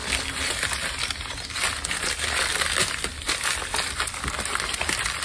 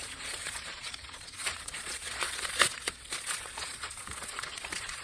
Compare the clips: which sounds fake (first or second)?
second